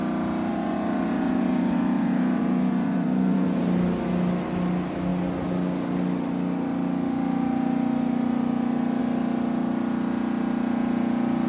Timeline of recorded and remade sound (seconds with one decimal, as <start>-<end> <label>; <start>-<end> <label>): 0.0-0.5 recorded; 0.5-3.6 remade; 3.6-11.5 recorded